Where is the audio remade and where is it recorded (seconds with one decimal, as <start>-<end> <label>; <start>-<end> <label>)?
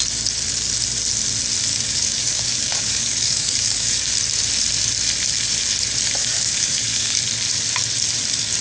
0.0-1.7 recorded; 1.7-4.1 remade; 4.1-6.2 recorded; 6.2-7.2 remade; 7.2-8.6 recorded